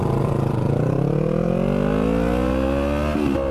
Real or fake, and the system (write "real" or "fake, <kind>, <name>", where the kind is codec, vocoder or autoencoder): fake, vocoder, BigVGAN v2